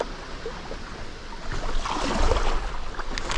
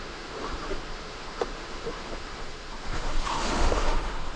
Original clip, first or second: first